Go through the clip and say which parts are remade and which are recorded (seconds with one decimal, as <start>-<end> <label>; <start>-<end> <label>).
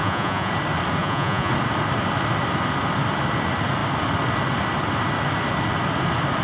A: 0.0-0.5 remade; 0.5-1.0 recorded; 1.0-1.5 remade; 1.5-6.4 recorded